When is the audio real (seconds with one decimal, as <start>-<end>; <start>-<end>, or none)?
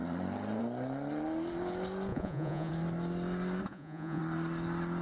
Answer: 0.0-2.1; 2.7-3.7; 4.2-5.0